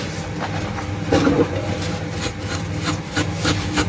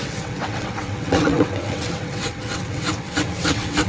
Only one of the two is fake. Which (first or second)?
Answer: second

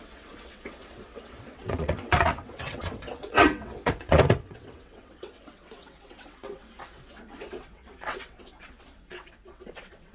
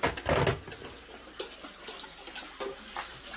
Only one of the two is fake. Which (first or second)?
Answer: first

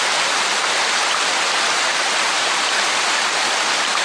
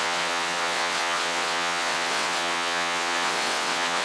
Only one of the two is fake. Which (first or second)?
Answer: second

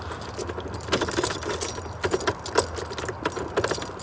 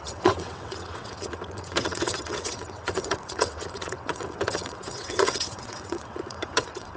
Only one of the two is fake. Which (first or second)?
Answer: second